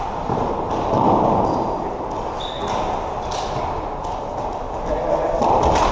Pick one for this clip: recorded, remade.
recorded